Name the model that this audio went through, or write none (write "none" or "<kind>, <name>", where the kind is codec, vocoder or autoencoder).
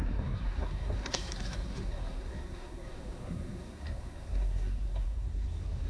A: codec, SNAC